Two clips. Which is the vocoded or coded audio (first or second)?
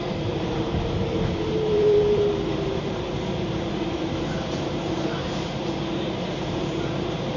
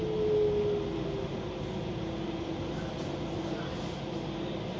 first